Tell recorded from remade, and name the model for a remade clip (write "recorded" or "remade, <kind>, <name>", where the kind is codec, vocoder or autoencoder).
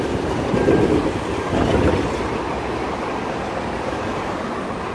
recorded